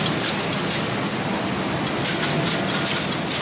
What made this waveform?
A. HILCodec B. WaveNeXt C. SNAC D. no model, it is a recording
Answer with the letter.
D